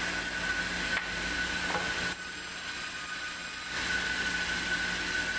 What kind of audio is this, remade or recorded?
recorded